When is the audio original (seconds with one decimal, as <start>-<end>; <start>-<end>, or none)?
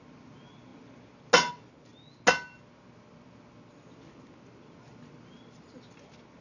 0.0-6.4